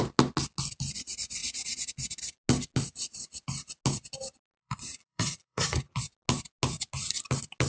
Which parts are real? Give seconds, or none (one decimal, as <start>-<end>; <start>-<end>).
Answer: 0.0-4.6; 6.0-7.7